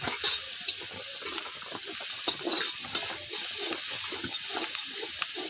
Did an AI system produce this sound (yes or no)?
no